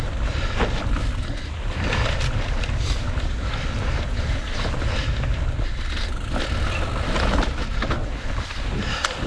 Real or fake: fake